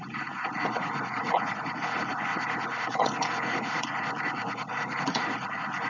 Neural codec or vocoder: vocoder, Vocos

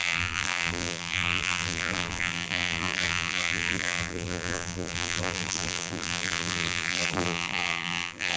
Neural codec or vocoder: vocoder, BigVGAN v2